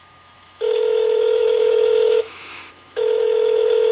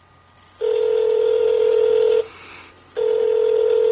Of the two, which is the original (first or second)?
second